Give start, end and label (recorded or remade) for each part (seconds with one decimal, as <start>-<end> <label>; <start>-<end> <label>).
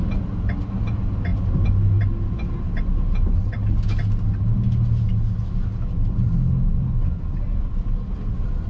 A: 0.0-6.7 recorded; 6.7-7.7 remade; 7.7-8.7 recorded